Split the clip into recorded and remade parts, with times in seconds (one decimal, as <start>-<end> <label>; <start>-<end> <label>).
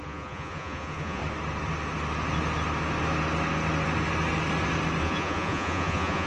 0.0-1.2 remade; 1.2-5.0 recorded; 5.0-6.3 remade